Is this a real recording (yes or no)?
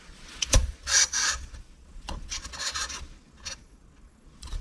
no